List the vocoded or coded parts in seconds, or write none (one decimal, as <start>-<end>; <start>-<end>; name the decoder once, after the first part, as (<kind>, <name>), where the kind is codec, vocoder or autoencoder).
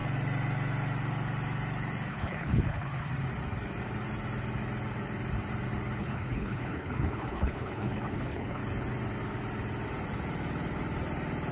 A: 2.1-3.0 (codec, HILCodec); 6.0-8.6